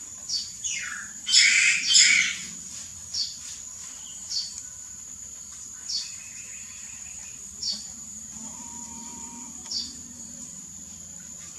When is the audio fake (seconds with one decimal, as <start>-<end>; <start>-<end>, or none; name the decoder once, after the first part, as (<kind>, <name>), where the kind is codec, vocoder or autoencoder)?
0.0-2.9 (vocoder, BigVGAN v2); 3.4-11.6